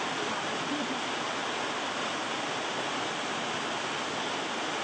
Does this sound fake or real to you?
real